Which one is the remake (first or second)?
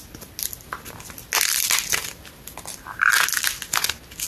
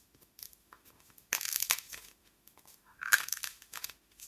second